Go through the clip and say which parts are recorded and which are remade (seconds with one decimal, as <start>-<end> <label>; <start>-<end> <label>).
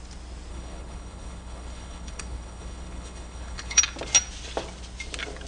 0.0-0.5 recorded; 0.5-3.8 remade; 3.8-5.5 recorded